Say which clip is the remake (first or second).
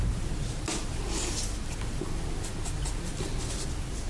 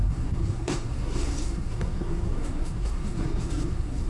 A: second